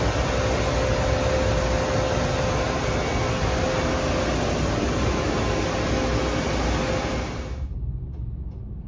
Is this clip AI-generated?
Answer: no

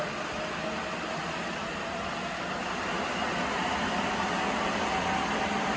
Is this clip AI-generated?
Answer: no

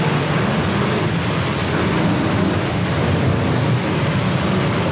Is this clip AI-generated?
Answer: no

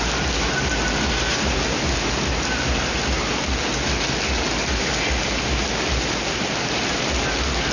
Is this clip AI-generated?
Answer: no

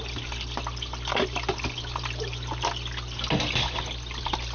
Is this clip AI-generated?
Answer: no